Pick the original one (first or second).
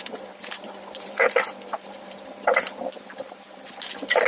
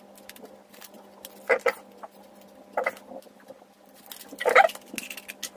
second